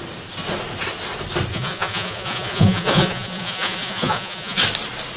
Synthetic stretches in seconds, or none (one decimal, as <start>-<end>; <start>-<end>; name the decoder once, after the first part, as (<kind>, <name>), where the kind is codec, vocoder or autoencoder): 1.5-4.6 (vocoder, Vocos)